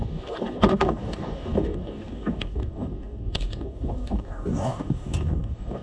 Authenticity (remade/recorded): remade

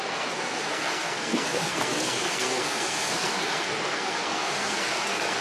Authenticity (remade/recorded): remade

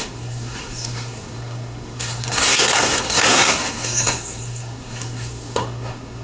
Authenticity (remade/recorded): remade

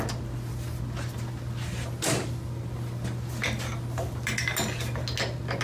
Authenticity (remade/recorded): recorded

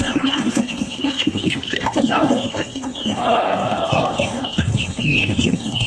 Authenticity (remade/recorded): remade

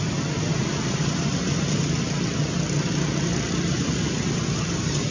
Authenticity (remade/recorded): recorded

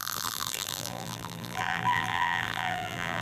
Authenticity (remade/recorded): remade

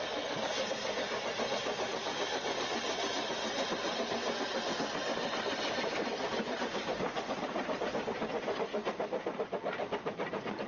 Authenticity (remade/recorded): recorded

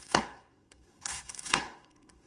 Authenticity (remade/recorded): remade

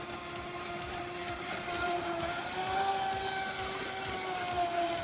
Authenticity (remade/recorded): recorded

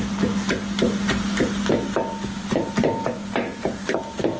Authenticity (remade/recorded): recorded